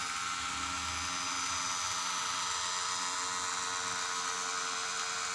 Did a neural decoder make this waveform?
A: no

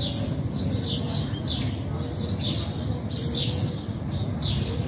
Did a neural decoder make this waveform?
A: no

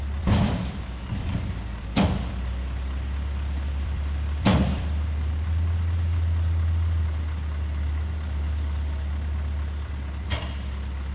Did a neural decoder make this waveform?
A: yes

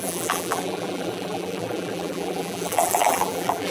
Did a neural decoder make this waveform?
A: yes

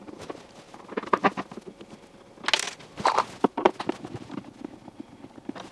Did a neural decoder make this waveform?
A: no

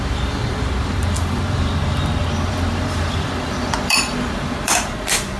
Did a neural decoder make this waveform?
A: yes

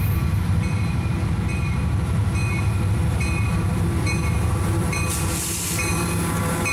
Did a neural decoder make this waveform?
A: yes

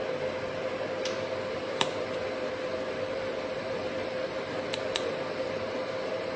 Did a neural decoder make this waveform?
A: yes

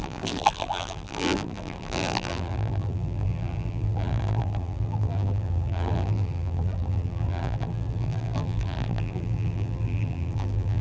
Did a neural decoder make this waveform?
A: yes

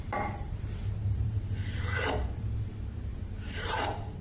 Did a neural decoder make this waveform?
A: yes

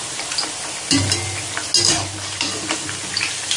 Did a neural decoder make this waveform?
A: no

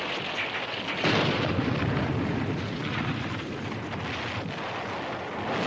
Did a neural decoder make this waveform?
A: no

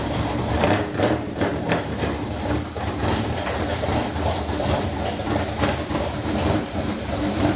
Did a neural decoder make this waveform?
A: yes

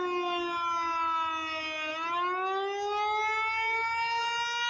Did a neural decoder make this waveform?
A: no